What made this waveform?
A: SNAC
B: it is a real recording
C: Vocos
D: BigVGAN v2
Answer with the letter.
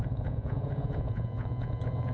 C